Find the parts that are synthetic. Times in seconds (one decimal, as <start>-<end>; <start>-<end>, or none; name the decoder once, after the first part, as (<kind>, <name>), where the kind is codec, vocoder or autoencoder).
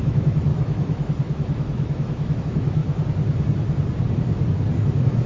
0.0-2.8 (autoencoder, DAC-VAE); 4.8-5.3